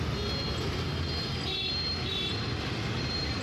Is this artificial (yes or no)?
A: no